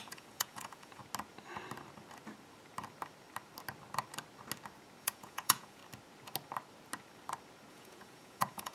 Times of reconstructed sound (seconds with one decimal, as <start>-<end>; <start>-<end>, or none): 0.0-1.0; 5.0-5.8; 7.7-8.7